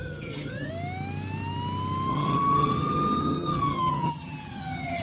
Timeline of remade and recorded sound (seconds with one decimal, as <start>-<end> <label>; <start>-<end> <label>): 0.0-0.7 remade; 0.7-2.1 recorded; 2.1-5.0 remade